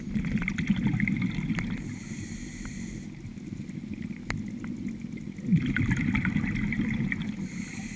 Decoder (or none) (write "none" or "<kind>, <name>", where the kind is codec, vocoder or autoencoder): none